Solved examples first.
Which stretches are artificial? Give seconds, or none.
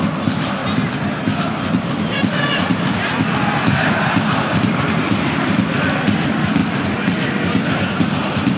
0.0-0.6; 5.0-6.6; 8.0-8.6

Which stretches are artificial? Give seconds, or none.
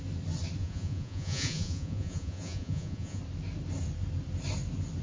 0.6-3.2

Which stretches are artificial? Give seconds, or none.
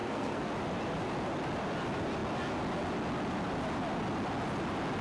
0.0-0.5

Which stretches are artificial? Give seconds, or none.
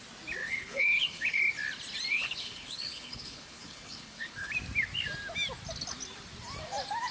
0.4-1.4; 2.1-4.5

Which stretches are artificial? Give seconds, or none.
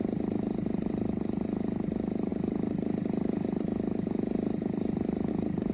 none